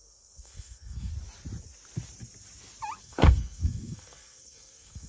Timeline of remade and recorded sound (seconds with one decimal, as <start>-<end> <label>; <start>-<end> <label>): 0.0-1.1 remade; 1.1-3.0 recorded; 3.0-5.1 remade